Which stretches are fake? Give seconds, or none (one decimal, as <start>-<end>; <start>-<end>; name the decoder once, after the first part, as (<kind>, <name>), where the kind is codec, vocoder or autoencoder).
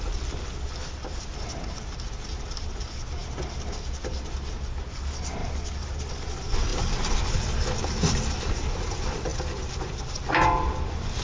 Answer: none